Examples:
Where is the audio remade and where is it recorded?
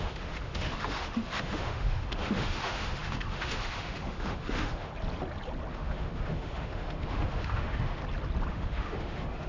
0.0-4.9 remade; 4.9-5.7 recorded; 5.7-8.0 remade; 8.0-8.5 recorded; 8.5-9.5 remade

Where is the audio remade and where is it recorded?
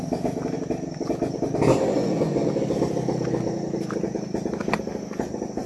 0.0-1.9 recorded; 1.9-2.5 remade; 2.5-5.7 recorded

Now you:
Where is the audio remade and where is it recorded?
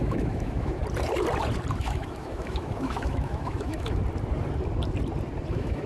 0.0-0.8 remade; 0.8-1.7 recorded; 1.7-4.0 remade; 4.0-5.5 recorded; 5.5-5.9 remade